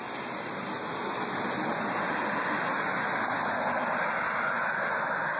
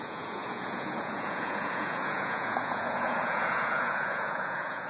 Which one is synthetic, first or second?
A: second